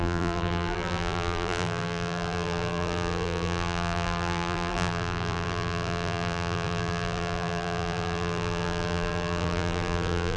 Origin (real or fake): fake